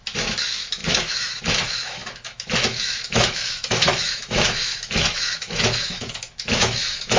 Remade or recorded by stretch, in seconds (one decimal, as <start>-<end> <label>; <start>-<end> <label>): 0.0-7.2 remade